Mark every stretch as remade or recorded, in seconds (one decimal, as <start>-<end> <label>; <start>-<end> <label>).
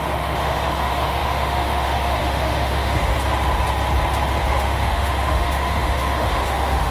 0.0-3.1 remade; 3.1-4.4 recorded; 4.4-6.9 remade